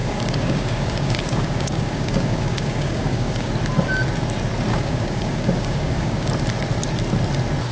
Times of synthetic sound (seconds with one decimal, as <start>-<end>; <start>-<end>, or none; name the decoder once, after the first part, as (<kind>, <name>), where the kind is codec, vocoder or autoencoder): 0.0-3.5 (codec, DAC); 4.7-6.3